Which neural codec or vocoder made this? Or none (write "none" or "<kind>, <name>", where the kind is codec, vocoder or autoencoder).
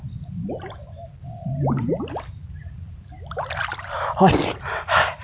none